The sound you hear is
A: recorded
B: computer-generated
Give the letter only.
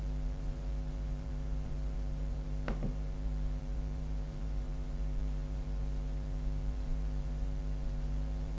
B